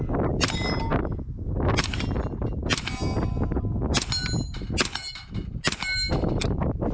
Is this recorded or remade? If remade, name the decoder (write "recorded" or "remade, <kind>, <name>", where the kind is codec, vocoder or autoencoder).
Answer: recorded